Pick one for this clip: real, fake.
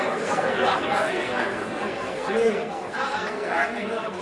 fake